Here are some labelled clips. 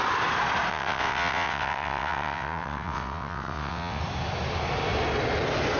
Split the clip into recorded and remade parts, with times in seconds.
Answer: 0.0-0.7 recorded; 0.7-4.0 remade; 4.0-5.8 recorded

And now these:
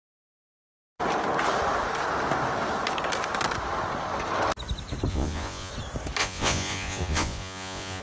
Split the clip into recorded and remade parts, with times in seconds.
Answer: 0.0-5.1 recorded; 5.1-5.7 remade; 5.7-6.2 recorded; 6.2-8.0 remade